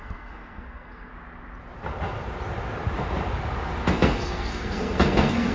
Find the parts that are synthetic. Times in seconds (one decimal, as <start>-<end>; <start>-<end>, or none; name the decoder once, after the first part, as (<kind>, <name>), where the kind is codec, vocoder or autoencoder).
0.0-1.1 (codec, SNAC); 3.9-5.5